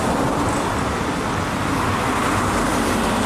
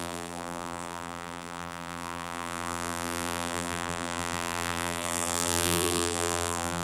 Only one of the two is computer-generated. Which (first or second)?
second